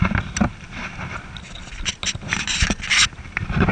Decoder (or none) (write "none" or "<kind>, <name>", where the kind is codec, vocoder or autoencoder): none